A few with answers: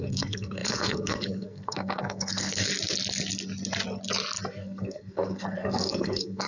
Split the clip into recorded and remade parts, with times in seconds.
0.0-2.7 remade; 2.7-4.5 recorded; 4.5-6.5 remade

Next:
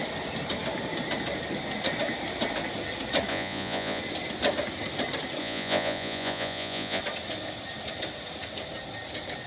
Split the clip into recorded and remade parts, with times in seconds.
0.0-3.3 recorded; 3.3-4.0 remade; 4.0-5.4 recorded; 5.4-7.0 remade; 7.0-9.5 recorded

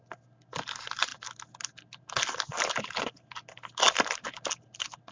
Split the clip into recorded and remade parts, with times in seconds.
0.0-5.1 recorded

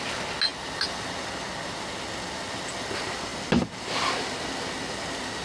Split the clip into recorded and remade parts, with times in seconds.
0.0-5.4 recorded

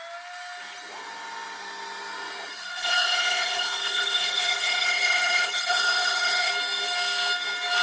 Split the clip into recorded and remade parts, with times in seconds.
0.0-2.5 recorded; 2.5-6.5 remade; 6.5-7.8 recorded

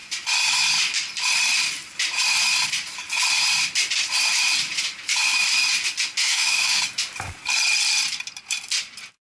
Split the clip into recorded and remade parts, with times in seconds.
0.0-6.2 recorded; 6.2-6.8 remade; 6.8-9.2 recorded